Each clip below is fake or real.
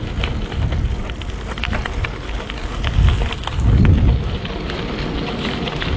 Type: real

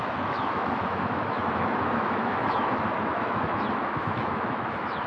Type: fake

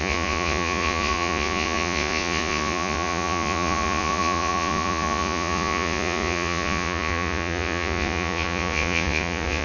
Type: fake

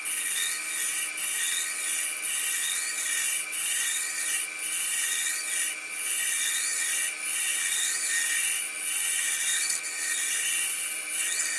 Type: real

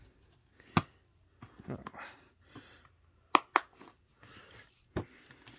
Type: real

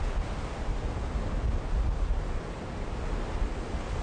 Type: real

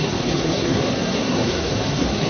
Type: fake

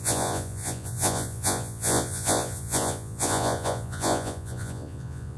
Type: fake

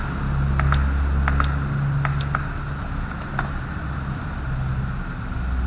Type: real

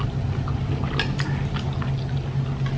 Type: real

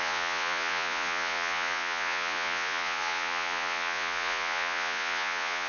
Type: fake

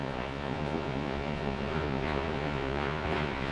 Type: fake